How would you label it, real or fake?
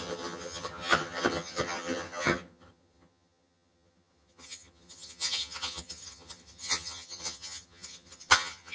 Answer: fake